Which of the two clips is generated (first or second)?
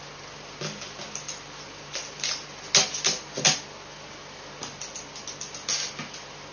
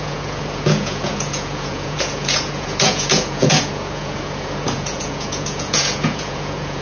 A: second